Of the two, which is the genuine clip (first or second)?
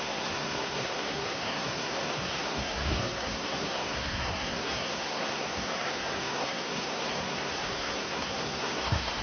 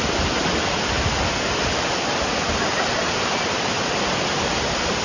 second